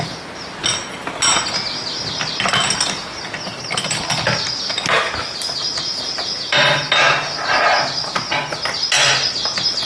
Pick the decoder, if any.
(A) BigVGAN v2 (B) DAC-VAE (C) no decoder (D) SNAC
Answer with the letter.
C